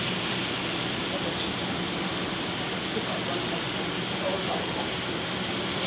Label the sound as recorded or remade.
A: recorded